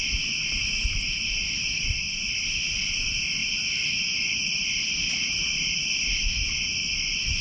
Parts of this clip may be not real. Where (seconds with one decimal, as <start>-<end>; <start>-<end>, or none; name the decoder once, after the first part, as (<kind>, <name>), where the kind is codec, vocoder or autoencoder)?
none